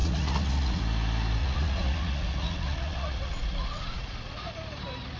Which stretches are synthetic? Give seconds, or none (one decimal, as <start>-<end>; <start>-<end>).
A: 0.0-0.8; 1.4-4.5